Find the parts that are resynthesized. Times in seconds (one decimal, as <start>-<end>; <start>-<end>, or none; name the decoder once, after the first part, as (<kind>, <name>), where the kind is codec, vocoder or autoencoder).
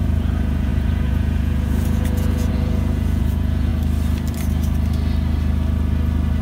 0.0-3.7 (vocoder, Vocos)